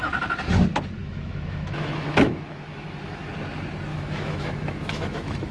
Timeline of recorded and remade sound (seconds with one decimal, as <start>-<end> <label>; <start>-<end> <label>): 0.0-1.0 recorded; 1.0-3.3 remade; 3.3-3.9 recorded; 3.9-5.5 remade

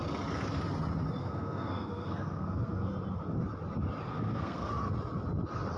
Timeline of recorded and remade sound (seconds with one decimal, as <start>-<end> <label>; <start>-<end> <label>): 0.0-1.2 recorded; 1.2-2.9 remade; 2.9-4.1 recorded; 4.1-4.7 remade; 4.7-5.8 recorded

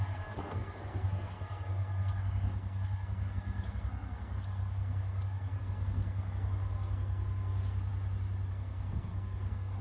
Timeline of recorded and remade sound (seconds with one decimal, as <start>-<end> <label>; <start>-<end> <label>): 0.0-7.9 remade; 7.9-8.5 recorded; 8.5-9.8 remade

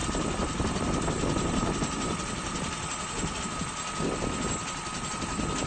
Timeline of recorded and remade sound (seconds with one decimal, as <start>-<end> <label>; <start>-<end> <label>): 0.0-5.7 recorded

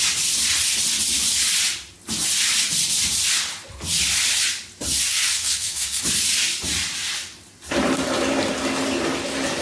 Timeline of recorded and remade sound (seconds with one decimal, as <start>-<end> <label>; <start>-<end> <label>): 0.0-5.1 recorded; 5.1-6.0 remade; 6.0-9.6 recorded

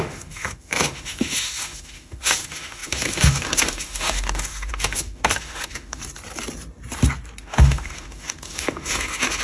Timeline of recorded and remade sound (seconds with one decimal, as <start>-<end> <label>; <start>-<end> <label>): 0.0-6.0 remade; 6.0-7.4 recorded; 7.4-9.4 remade

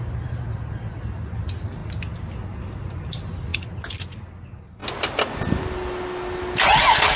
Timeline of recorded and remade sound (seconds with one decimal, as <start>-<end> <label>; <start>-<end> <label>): 0.0-7.2 recorded

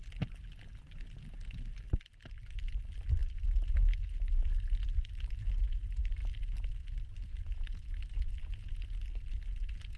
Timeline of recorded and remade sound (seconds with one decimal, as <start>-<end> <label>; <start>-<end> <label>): 0.0-10.0 recorded